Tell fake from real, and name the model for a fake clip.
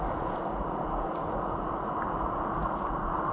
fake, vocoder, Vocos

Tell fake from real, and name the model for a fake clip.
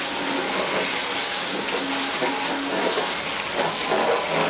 real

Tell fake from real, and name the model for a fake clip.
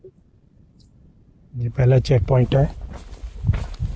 real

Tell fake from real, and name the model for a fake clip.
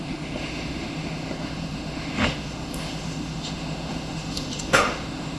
fake, autoencoder, DAC-VAE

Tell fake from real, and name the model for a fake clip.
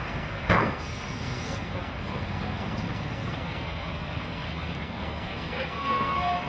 fake, codec, SNAC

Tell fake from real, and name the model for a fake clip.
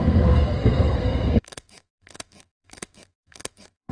fake, codec, SNAC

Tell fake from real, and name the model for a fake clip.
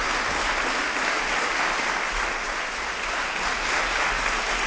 real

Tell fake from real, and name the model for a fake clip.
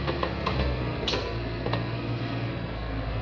fake, codec, SNAC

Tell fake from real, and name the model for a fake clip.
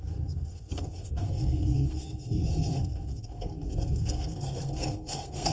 fake, codec, SNAC